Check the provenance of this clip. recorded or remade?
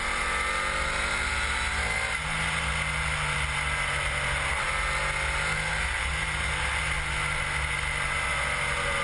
recorded